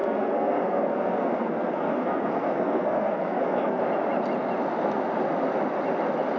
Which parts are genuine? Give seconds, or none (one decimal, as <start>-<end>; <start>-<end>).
3.8-6.4